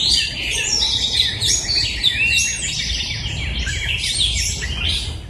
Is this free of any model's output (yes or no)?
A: yes